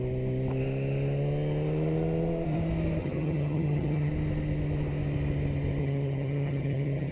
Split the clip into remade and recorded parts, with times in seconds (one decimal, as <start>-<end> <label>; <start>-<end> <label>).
0.0-3.0 recorded; 3.0-4.1 remade; 4.1-5.8 recorded; 5.8-7.1 remade